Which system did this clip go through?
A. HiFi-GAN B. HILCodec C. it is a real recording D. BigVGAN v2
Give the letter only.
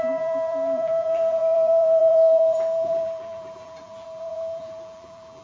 D